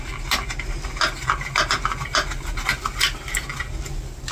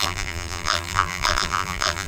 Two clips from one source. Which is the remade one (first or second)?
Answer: second